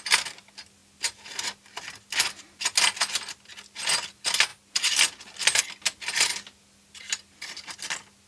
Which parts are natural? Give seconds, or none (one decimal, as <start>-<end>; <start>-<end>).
0.0-8.3